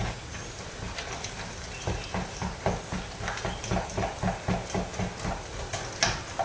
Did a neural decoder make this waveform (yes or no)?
no